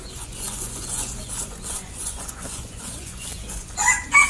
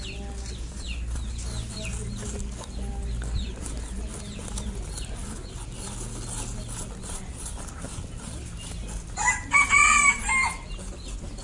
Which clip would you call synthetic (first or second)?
first